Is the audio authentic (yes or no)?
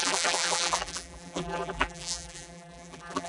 no